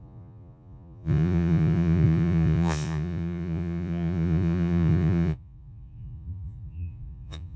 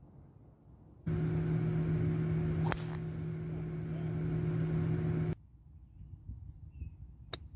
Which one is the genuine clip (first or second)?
second